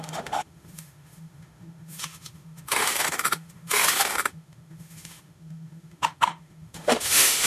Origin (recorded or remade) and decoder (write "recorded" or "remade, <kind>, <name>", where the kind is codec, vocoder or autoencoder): remade, autoencoder, DAC-VAE